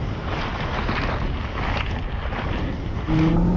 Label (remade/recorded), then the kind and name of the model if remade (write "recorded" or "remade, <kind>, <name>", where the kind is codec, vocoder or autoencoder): recorded